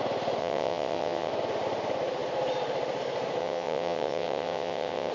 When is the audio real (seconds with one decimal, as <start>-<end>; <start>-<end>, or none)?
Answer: 0.0-0.4; 1.3-3.4